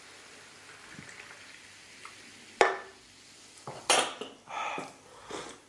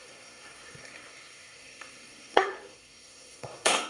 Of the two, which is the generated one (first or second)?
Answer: second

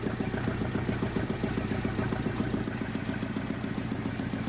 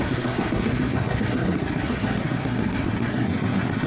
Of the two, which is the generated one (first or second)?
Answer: second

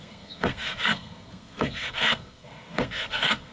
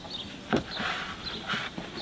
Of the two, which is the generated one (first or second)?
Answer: first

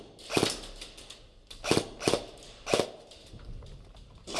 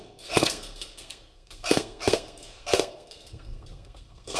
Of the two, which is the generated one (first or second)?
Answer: second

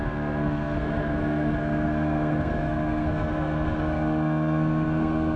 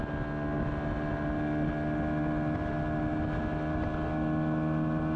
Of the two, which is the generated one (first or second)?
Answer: first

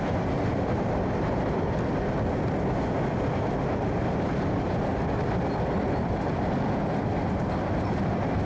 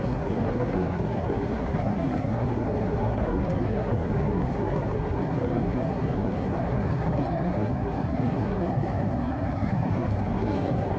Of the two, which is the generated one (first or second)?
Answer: second